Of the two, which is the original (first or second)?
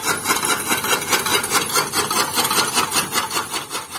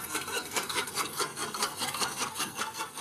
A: first